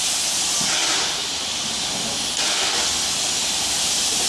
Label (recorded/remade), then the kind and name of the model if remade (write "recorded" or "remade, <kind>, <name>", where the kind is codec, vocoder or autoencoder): recorded